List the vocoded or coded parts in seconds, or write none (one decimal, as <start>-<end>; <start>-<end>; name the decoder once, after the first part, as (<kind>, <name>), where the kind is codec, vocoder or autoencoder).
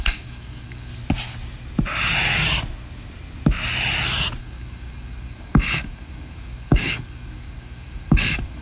0.0-0.9 (codec, DAC); 4.4-8.6